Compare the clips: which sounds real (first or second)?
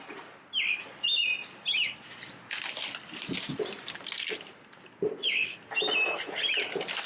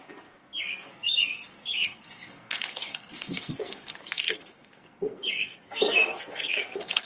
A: first